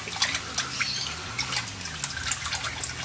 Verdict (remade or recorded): recorded